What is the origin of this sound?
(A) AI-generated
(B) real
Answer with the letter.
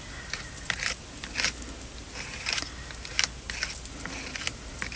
B